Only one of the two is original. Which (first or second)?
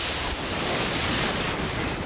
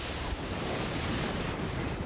first